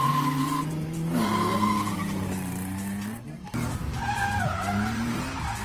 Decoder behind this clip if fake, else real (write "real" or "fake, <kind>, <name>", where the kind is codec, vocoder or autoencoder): fake, vocoder, BigVGAN v2